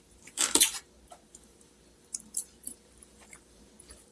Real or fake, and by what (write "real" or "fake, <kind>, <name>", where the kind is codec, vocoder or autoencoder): fake, vocoder, BigVGAN v2